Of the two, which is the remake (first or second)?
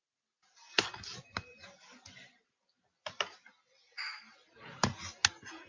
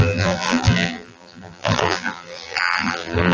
second